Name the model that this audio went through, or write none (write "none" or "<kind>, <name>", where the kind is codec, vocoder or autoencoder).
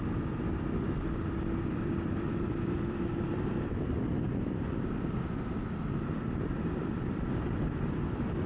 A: vocoder, BigVGAN v2